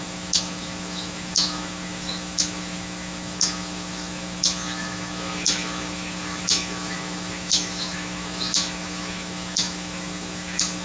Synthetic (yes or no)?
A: yes